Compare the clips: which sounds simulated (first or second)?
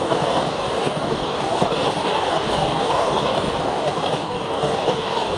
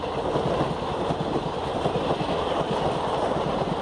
first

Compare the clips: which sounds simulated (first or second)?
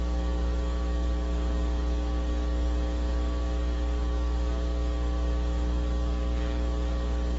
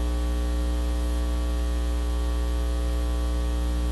first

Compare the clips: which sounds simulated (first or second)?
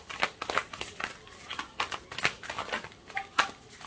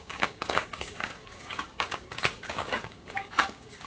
second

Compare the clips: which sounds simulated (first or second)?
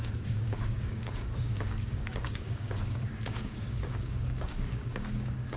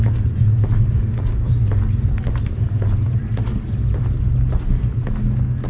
first